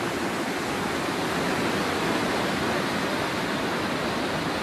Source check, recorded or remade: recorded